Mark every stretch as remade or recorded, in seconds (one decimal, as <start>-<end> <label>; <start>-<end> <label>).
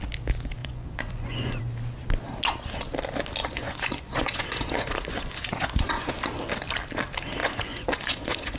0.0-0.6 recorded; 0.6-1.6 remade; 1.6-3.4 recorded; 3.4-6.1 remade; 6.1-7.4 recorded; 7.4-8.6 remade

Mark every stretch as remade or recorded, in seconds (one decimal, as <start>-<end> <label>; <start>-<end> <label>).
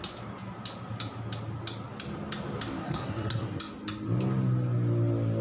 0.0-2.8 recorded; 2.8-3.6 remade; 3.6-5.4 recorded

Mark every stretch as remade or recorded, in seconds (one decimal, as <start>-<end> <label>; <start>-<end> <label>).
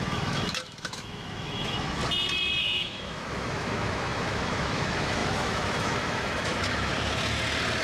0.0-2.0 remade; 2.0-2.6 recorded; 2.6-6.9 remade; 6.9-7.8 recorded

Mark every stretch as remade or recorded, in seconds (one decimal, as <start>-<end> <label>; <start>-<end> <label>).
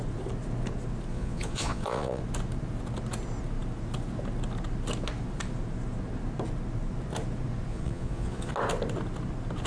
0.0-1.1 recorded; 1.1-2.2 remade; 2.2-7.7 recorded; 7.7-8.5 remade; 8.5-9.7 recorded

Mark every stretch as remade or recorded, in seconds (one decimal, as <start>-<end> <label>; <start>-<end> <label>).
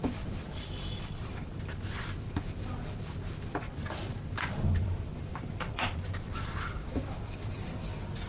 0.0-4.8 recorded; 4.8-6.6 remade; 6.6-8.3 recorded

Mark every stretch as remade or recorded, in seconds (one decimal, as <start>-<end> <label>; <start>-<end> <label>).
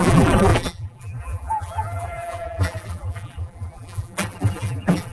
0.0-5.1 remade